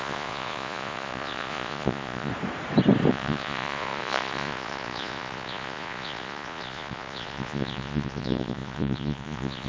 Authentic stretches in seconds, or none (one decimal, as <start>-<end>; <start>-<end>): 2.3-3.1